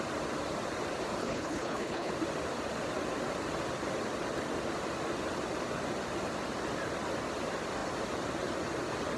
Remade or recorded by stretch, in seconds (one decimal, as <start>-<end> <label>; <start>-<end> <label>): 0.0-1.2 recorded; 1.2-2.1 remade; 2.1-9.2 recorded